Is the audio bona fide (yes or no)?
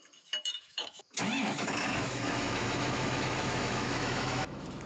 no